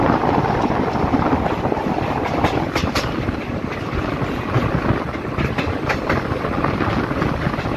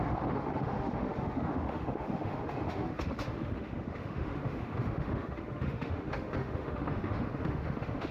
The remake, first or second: second